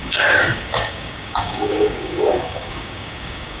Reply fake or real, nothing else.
fake